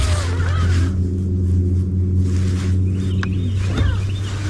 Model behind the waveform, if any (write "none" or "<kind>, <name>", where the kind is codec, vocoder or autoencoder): none